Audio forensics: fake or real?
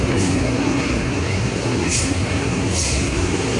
fake